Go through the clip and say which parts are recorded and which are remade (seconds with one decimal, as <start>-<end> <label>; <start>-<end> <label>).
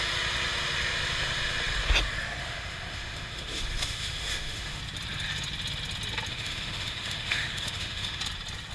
0.0-2.4 recorded; 2.4-4.8 remade; 4.8-6.3 recorded; 6.3-8.2 remade; 8.2-8.7 recorded